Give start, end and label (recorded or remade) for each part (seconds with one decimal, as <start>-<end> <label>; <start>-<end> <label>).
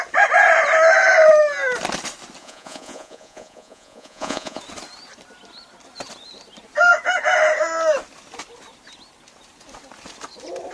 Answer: 0.0-2.4 recorded; 2.4-4.6 remade; 4.6-10.7 recorded